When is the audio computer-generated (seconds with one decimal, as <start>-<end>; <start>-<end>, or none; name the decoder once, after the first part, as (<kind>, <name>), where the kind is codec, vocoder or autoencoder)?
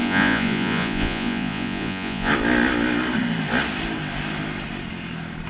0.0-2.3 (vocoder, Vocos)